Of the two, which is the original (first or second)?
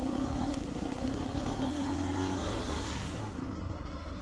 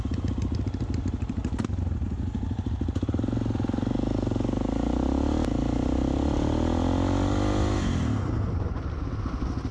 second